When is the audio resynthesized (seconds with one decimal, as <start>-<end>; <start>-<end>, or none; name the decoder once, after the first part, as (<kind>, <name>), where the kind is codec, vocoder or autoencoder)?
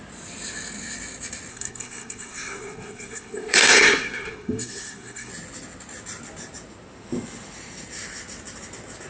1.5-5.3 (codec, SNAC)